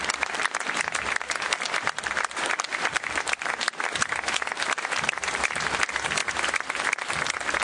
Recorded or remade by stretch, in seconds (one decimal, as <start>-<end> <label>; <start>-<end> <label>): 0.0-7.6 remade